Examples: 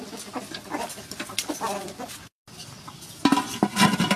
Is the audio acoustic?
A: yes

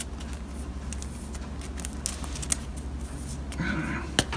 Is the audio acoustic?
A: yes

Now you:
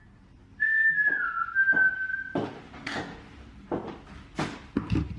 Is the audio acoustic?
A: yes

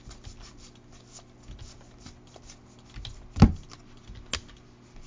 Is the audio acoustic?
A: yes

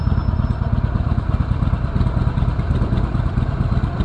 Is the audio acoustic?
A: yes